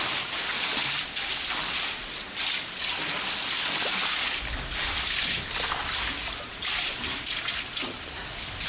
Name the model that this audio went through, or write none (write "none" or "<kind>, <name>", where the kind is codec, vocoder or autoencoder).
none